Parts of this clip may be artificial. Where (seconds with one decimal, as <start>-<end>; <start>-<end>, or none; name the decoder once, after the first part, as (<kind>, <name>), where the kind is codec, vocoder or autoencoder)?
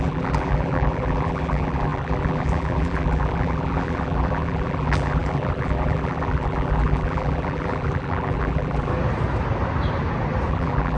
0.0-8.9 (vocoder, BigVGAN v2); 10.5-11.0